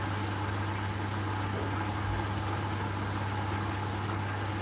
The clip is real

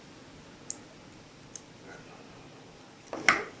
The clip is real